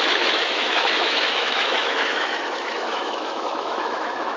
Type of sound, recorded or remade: remade